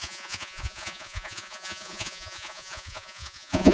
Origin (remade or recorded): remade